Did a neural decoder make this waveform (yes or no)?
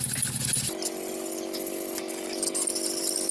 no